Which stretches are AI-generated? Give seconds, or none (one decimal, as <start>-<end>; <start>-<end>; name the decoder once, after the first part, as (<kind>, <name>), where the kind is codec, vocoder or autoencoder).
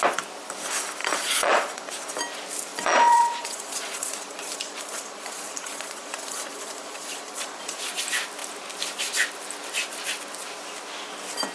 1.0-1.9 (vocoder, Vocos); 2.7-7.8